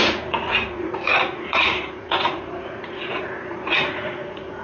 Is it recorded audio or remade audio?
remade